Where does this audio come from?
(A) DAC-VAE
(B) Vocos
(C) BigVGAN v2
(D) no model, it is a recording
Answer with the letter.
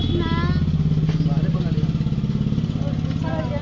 D